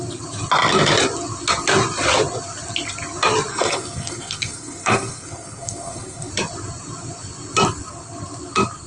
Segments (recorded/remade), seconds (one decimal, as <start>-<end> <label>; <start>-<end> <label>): 0.0-3.5 recorded; 3.5-6.3 remade; 6.3-8.9 recorded